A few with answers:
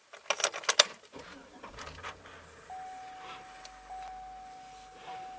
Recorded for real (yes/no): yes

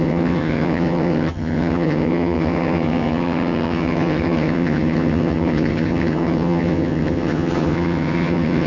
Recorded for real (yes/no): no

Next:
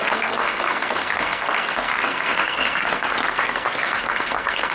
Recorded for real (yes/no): no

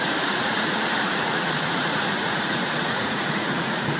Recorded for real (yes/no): no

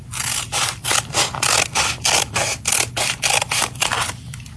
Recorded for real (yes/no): yes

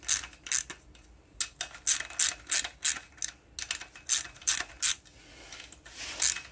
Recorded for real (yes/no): yes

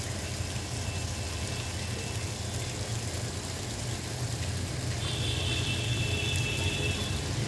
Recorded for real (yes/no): yes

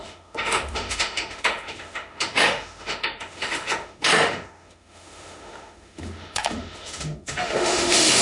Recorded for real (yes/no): no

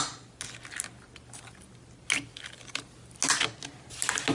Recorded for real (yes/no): yes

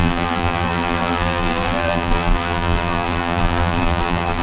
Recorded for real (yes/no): no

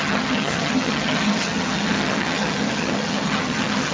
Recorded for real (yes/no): no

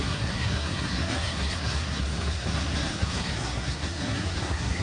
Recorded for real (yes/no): no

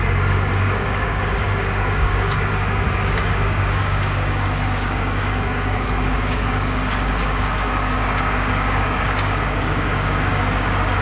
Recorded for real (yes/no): no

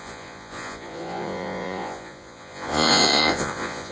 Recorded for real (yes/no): no